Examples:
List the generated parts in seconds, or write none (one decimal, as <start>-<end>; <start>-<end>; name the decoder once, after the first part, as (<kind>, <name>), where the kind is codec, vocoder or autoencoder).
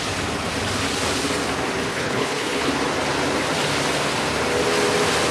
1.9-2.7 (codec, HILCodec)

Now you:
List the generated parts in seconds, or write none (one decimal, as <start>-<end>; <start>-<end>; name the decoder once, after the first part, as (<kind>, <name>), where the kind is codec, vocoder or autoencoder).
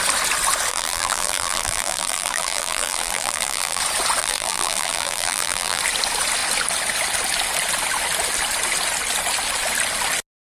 0.7-3.8 (vocoder, BigVGAN v2); 4.2-5.8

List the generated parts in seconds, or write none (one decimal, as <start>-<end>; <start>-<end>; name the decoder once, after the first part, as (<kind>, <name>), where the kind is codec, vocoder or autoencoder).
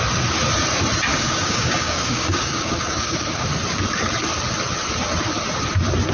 1.1-3.5 (codec, DAC)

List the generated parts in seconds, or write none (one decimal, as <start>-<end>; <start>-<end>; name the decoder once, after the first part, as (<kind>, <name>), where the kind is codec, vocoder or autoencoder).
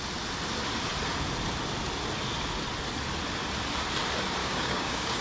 4.4-5.2 (codec, DAC)